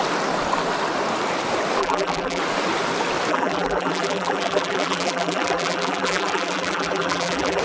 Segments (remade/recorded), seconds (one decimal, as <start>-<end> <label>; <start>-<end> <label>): 0.0-1.8 recorded; 1.8-2.4 remade; 2.4-3.3 recorded; 3.3-7.6 remade